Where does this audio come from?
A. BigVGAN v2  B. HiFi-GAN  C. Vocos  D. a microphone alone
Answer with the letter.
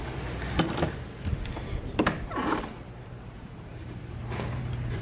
A